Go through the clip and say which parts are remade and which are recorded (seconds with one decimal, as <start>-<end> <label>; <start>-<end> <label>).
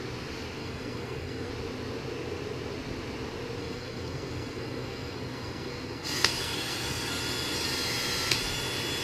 0.0-0.6 recorded; 0.6-1.5 remade; 1.5-3.6 recorded; 3.6-7.2 remade; 7.2-9.0 recorded